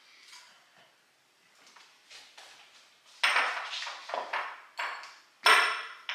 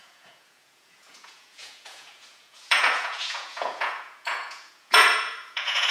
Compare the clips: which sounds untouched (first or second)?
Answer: first